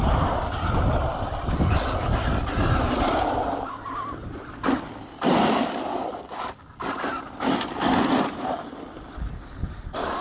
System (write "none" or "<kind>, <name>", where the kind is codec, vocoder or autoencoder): none